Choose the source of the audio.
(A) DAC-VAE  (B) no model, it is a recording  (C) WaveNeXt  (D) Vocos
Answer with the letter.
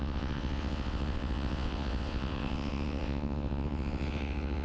C